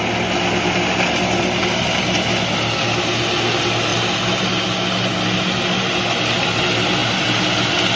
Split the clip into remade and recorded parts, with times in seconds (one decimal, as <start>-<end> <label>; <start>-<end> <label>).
0.0-8.0 recorded